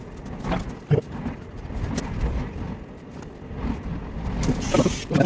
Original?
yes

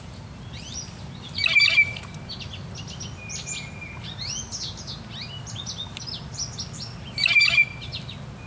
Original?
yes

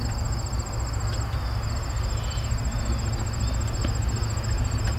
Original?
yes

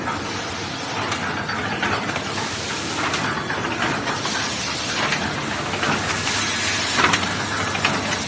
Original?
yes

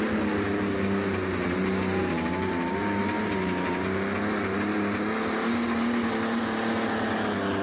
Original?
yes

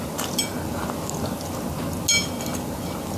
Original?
yes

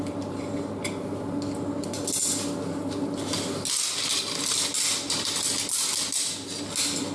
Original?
yes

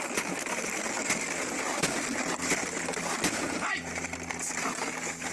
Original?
yes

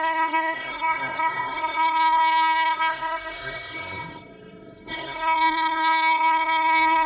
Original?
no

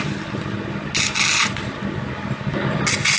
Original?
yes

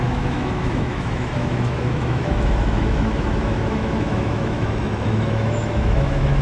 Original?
no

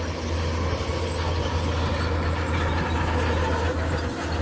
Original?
yes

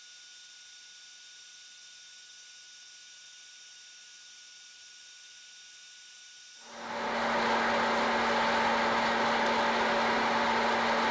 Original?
yes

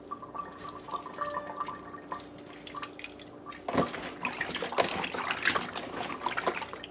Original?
yes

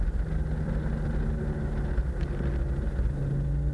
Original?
yes